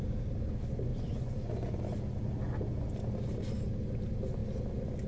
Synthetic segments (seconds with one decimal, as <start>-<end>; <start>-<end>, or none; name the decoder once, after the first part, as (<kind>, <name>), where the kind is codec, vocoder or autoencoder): 0.9-1.8 (vocoder, Vocos)